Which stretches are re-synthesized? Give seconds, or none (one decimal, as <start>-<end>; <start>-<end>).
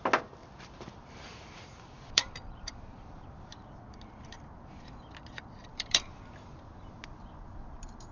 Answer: 0.4-3.3; 5.7-6.2